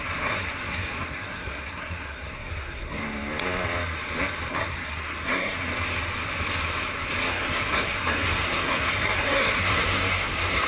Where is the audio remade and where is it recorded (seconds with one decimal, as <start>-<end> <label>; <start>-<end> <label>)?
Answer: 0.0-3.0 remade; 3.0-4.5 recorded; 4.5-5.7 remade; 5.7-7.3 recorded; 7.3-10.7 remade